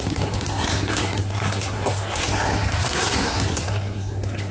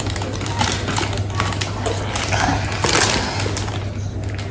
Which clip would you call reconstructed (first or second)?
first